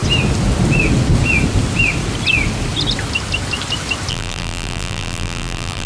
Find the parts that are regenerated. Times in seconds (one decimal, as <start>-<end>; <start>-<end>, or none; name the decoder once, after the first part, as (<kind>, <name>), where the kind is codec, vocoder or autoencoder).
4.1-5.9 (vocoder, BigVGAN v2)